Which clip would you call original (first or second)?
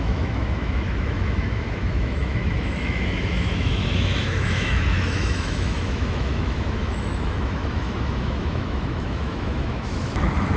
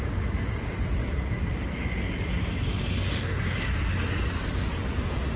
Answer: second